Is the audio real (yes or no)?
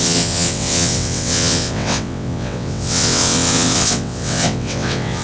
no